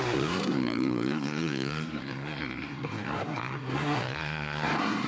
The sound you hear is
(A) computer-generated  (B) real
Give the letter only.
A